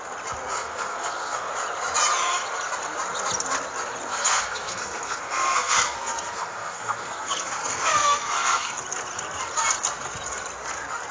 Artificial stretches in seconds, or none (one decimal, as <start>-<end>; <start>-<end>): 0.5-1.5; 4.1-8.8